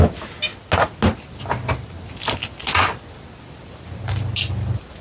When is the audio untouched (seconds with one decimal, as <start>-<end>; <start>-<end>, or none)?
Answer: 0.0-5.0